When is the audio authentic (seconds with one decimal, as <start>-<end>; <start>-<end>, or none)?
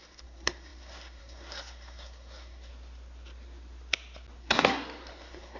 2.7-4.4